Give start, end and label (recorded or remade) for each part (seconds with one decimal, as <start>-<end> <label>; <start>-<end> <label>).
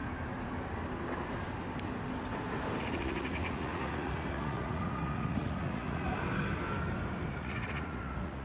0.0-2.8 recorded; 2.8-6.1 remade; 6.1-7.3 recorded; 7.3-8.4 remade